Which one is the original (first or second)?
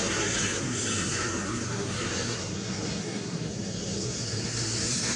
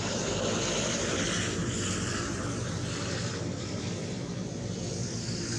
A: second